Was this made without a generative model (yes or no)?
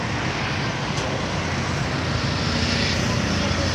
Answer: yes